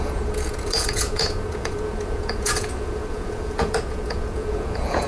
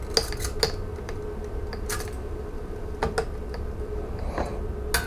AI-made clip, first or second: first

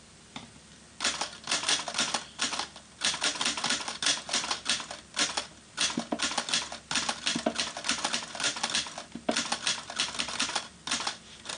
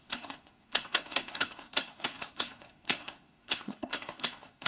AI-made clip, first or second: second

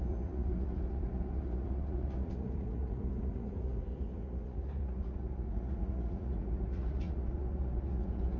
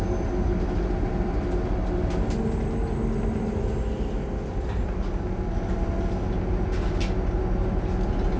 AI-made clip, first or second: first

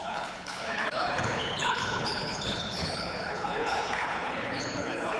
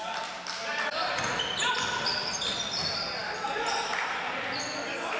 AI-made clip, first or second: first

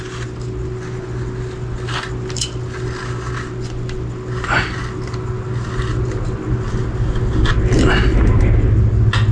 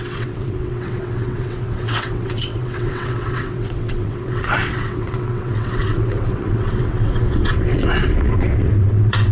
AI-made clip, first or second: second